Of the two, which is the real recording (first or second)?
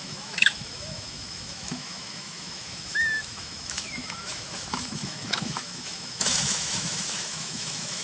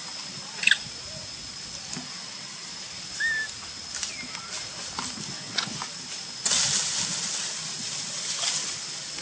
second